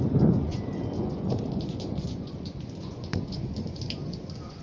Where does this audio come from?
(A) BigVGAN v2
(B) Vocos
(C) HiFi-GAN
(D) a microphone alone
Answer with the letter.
B